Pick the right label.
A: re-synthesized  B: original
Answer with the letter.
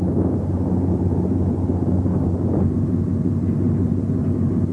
B